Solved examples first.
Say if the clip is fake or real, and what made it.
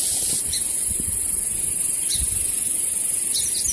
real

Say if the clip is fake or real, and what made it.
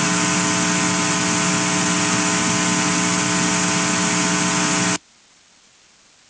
real